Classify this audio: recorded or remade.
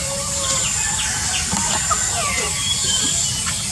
recorded